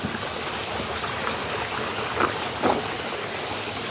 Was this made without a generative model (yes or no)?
yes